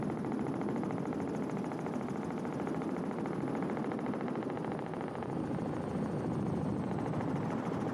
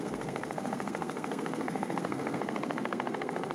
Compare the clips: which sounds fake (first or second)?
second